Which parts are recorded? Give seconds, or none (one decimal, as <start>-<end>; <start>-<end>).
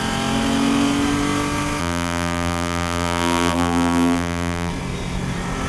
0.0-1.8; 4.7-5.7